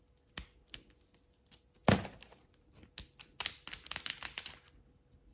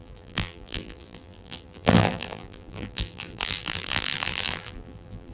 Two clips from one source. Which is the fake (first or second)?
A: second